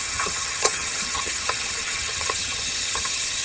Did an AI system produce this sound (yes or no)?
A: yes